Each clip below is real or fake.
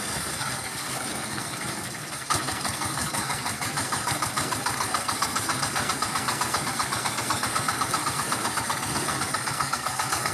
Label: fake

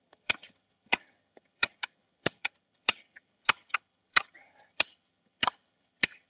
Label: fake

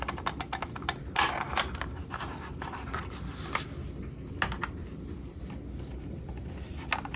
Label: real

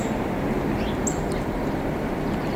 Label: fake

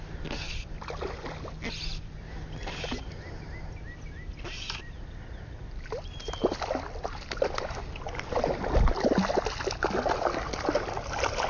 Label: real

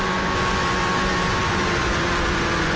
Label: fake